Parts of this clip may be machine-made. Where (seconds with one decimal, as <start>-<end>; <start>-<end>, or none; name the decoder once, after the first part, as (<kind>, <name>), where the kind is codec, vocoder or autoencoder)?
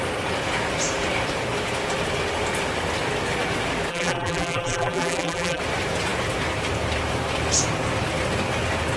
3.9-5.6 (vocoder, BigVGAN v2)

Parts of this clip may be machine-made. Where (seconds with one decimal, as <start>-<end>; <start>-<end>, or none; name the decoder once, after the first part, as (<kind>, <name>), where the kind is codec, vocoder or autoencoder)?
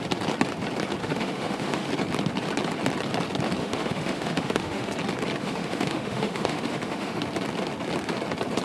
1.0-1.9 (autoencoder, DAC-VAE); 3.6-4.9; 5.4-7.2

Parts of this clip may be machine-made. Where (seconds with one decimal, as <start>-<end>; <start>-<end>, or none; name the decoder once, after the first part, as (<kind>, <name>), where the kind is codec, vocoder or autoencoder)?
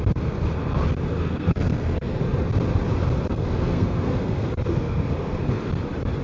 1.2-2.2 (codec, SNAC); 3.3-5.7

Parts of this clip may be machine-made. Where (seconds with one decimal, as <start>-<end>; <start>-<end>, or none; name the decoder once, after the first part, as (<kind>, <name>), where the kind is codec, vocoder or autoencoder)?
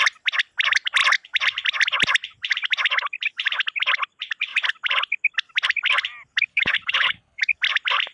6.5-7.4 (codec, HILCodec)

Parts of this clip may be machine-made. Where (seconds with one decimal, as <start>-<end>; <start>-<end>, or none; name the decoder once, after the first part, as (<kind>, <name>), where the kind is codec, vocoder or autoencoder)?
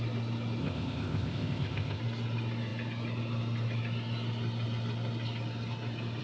0.6-2.0 (codec, ZipCodec)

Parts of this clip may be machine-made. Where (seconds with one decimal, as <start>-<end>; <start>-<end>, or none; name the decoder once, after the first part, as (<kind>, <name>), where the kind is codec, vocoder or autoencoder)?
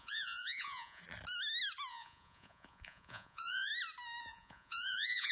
0.0-1.0 (vocoder, Vocos); 1.9-3.7; 4.2-5.3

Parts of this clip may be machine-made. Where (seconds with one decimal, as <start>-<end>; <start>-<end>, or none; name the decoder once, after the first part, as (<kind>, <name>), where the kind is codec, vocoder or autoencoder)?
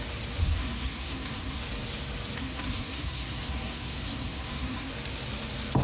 0.4-1.6 (codec, SNAC); 2.4-4.9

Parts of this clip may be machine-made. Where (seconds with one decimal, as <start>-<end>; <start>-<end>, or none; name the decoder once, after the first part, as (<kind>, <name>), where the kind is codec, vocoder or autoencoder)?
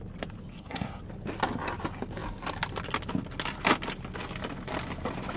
0.5-1.0 (codec, SNAC)